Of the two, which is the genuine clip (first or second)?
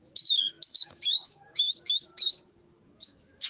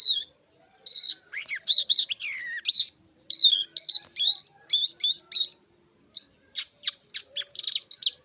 second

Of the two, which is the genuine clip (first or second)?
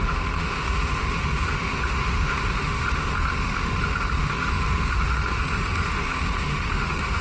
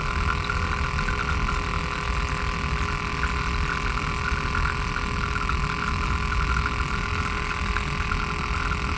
second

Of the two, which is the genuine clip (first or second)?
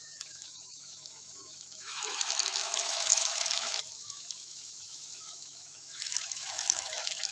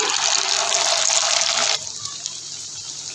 second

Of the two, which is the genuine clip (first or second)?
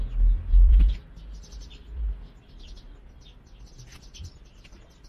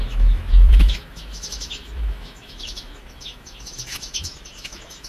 first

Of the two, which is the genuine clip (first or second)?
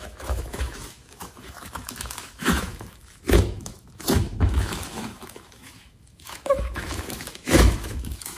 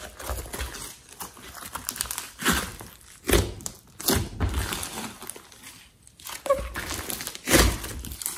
second